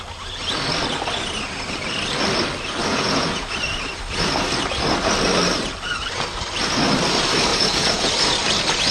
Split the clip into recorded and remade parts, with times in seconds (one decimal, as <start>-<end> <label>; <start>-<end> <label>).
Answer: 0.0-2.9 recorded; 2.9-3.5 remade; 3.5-7.5 recorded; 7.5-8.1 remade; 8.1-8.9 recorded